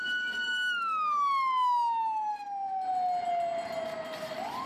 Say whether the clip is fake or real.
real